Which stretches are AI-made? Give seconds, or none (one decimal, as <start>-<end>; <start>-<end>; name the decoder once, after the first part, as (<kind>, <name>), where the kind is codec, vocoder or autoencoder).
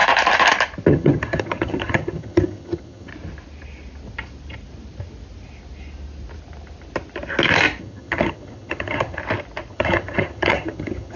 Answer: 0.9-3.1 (vocoder, HiFi-GAN); 7.8-9.2; 9.7-11.2